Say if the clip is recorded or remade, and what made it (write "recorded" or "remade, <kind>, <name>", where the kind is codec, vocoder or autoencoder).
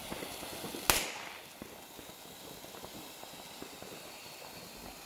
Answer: recorded